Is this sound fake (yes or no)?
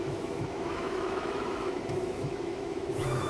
yes